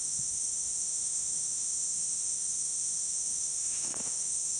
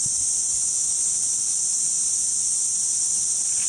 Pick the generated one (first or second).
first